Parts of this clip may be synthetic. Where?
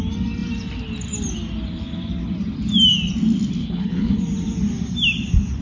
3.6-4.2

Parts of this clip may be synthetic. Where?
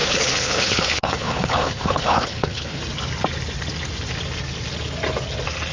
0.0-2.8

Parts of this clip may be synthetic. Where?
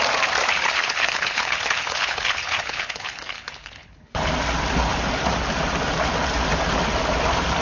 0.4-4.3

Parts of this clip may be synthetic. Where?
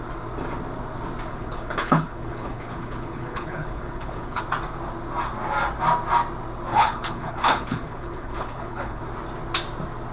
1.3-4.4; 6.7-9.0